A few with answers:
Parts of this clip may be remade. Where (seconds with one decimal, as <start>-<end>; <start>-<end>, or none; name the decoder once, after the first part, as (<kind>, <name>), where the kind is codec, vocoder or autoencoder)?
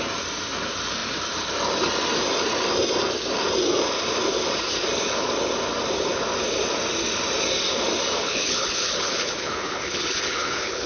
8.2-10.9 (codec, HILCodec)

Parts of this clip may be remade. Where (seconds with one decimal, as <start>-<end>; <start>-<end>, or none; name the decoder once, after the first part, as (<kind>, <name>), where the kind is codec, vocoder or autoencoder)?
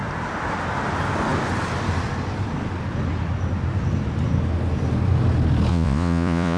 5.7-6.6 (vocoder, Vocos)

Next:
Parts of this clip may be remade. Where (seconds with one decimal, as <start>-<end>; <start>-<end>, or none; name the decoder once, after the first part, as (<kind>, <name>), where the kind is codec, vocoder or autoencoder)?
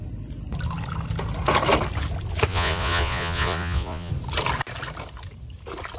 2.5-4.1 (vocoder, Vocos)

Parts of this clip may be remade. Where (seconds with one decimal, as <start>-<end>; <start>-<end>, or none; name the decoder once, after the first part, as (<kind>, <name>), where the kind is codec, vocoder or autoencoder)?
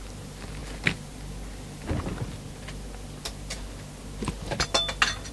none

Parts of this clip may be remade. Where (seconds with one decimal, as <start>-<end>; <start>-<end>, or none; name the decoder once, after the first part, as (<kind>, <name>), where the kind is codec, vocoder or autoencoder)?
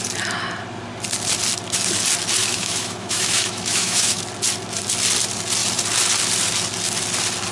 2.4-4.2 (autoencoder, DAC-VAE)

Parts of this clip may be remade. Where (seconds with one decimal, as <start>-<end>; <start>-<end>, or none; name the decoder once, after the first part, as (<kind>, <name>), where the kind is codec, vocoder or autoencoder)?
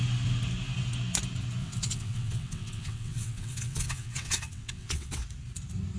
1.6-5.2 (vocoder, WaveNeXt)